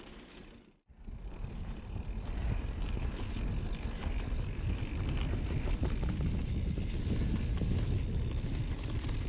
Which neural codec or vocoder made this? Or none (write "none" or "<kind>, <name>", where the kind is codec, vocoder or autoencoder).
none